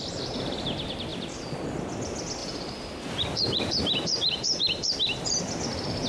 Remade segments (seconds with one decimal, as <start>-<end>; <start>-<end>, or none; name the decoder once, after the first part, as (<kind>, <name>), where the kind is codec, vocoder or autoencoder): 2.4-5.4 (vocoder, BigVGAN v2)

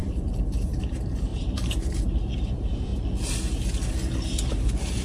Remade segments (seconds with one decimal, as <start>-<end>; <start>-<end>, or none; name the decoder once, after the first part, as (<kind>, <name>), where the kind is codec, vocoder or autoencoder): 0.0-2.9 (vocoder, BigVGAN v2); 4.5-5.0

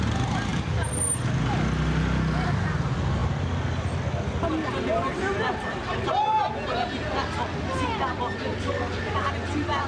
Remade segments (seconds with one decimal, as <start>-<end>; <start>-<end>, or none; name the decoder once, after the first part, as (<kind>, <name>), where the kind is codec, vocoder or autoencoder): 5.1-6.1 (vocoder, BigVGAN v2)

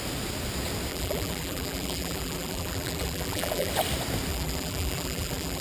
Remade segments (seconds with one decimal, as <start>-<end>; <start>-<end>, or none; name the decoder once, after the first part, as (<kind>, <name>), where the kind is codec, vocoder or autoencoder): 0.9-3.7 (vocoder, BigVGAN v2); 4.3-5.6

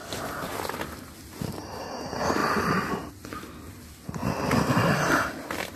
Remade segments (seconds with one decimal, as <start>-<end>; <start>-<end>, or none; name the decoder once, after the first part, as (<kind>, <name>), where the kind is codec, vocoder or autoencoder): 0.0-0.6 (vocoder, BigVGAN v2); 2.4-3.1

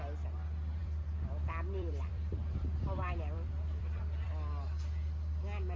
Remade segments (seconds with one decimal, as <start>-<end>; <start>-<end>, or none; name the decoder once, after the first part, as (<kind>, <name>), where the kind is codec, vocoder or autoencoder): 0.8-4.3 (vocoder, BigVGAN v2)

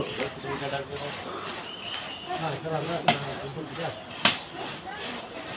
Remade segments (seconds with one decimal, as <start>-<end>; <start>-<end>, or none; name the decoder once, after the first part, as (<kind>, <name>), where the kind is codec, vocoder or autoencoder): none